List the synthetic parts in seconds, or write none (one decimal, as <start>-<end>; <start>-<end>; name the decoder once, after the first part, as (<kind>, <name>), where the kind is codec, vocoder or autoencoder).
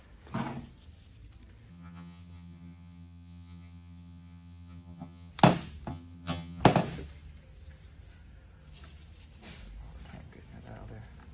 1.7-5.3 (vocoder, HiFi-GAN); 5.9-6.6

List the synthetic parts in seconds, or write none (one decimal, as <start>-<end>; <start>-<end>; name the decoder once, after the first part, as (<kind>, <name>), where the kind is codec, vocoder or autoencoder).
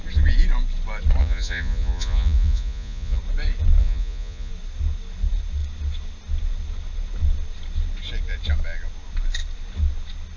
1.2-3.2 (vocoder, Vocos); 3.8-4.5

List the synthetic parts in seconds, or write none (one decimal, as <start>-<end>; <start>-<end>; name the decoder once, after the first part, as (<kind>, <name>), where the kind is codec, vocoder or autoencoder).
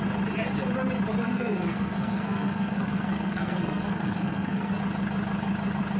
1.2-4.8 (codec, SNAC)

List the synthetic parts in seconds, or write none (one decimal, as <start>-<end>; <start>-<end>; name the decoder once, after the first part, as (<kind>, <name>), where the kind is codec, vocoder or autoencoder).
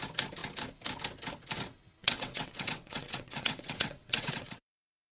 2.0-5.1 (vocoder, WaveNeXt)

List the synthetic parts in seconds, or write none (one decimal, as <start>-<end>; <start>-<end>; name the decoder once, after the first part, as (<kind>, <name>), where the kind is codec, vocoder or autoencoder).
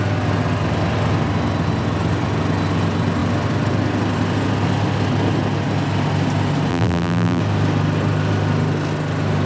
6.7-7.4 (vocoder, BigVGAN v2)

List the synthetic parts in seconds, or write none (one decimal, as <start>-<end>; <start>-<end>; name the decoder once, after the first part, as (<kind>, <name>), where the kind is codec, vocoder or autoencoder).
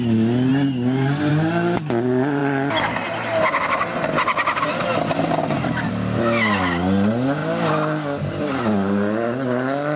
none